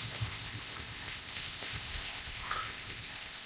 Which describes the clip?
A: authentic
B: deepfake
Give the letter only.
B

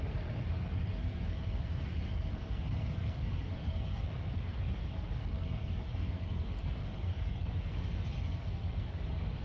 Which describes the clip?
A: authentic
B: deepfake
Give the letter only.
B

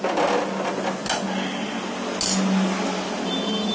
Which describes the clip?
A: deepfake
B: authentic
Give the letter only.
B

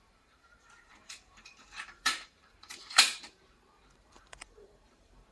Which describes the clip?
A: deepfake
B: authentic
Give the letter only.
A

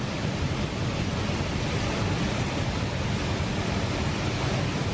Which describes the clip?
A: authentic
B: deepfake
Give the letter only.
A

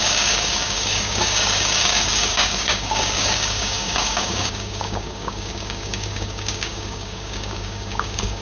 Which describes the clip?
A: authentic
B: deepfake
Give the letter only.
B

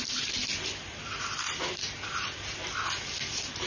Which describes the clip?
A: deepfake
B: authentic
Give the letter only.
B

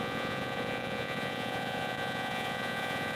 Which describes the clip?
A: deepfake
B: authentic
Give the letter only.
A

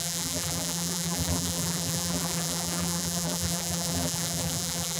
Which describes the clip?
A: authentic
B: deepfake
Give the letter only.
B